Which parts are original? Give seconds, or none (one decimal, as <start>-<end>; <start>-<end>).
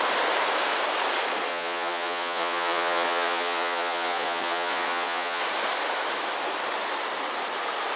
0.0-1.5; 5.4-8.0